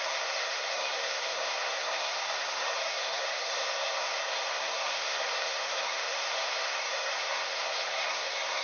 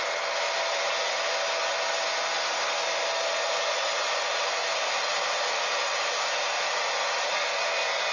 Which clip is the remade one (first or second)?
first